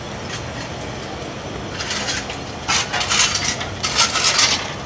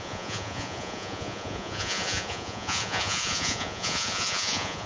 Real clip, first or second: first